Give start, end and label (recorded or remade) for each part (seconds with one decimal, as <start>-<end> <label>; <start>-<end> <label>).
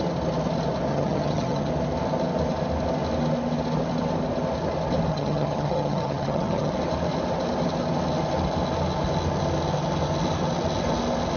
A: 0.0-0.9 recorded; 0.9-1.7 remade; 1.7-5.1 recorded; 5.1-6.7 remade; 6.7-11.4 recorded